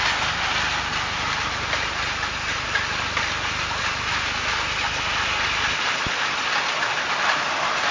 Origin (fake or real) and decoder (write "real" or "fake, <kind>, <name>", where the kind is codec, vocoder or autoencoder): real